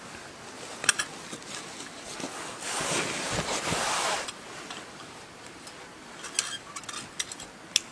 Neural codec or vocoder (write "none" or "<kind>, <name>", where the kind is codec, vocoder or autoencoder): none